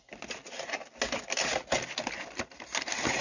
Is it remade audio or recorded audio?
recorded